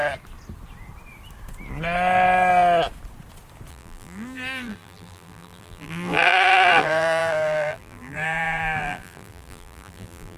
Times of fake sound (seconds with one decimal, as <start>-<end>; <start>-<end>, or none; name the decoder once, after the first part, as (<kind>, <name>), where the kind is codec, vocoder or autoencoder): 3.7-10.4 (vocoder, BigVGAN v2)